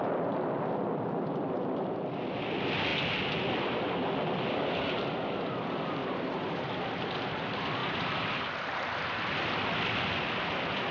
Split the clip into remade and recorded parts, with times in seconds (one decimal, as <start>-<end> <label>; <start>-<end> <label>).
0.0-6.0 recorded; 6.0-6.7 remade; 6.7-7.8 recorded; 7.8-8.3 remade; 8.3-10.9 recorded